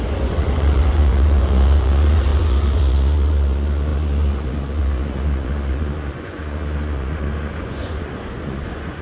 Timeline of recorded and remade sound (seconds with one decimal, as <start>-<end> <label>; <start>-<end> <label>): 0.0-9.0 remade